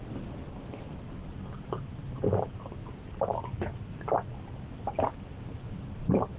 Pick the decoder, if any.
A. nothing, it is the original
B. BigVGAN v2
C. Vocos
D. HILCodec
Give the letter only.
A